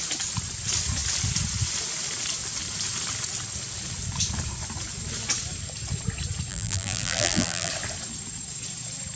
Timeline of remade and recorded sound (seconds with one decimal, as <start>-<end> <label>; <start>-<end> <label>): 0.0-6.5 recorded; 6.5-7.7 remade; 7.7-9.2 recorded